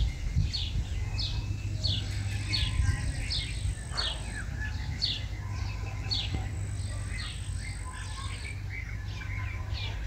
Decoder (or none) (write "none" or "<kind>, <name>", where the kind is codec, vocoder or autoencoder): none